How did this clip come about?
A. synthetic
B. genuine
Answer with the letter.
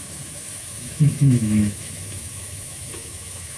A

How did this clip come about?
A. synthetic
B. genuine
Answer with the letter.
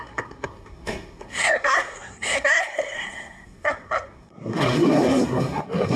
A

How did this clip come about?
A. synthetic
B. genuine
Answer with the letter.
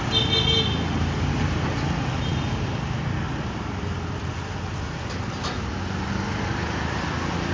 B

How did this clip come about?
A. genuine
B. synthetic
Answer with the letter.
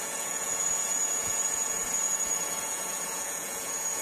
B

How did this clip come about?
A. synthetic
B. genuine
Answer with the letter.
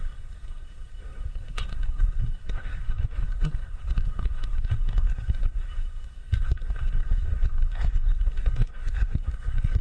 A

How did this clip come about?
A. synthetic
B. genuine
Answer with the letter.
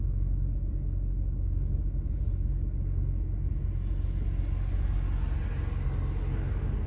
B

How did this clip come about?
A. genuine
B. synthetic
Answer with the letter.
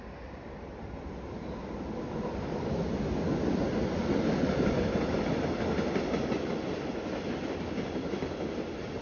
A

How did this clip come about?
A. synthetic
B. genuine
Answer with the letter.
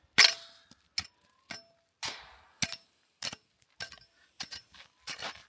B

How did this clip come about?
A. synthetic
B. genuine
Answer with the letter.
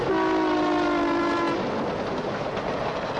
B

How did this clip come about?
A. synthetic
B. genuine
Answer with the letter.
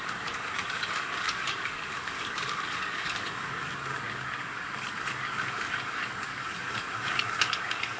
A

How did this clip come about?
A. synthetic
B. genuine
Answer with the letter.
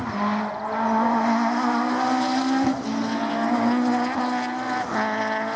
B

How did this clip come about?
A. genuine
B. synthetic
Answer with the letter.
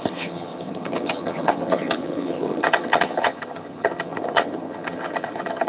B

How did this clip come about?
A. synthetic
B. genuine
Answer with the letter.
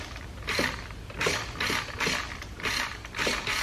B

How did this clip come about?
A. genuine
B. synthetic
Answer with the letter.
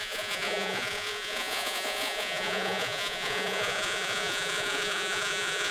B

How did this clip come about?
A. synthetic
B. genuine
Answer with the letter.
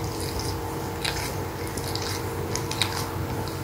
B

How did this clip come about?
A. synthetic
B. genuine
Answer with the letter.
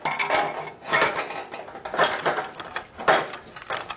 B